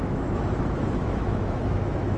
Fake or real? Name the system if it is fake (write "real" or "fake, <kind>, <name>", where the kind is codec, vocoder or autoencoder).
fake, autoencoder, DAC-VAE